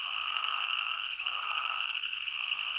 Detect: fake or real fake